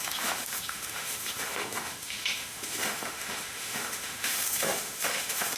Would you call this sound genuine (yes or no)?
no